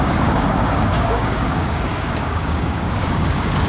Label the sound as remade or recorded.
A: remade